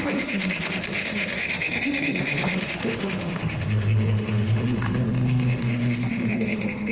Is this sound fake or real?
fake